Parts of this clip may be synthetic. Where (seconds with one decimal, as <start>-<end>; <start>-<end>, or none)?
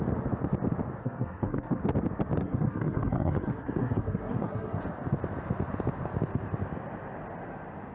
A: 1.0-1.8; 2.4-4.8